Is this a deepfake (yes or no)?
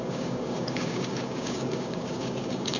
yes